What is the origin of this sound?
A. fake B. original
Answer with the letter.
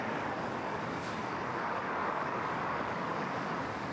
A